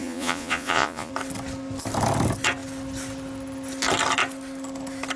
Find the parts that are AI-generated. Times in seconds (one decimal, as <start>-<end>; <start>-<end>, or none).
0.0-1.1